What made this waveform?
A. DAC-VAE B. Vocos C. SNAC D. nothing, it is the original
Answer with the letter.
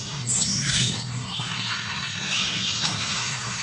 C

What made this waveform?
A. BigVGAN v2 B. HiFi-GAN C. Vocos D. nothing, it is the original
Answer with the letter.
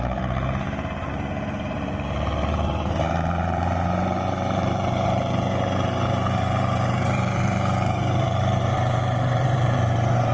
A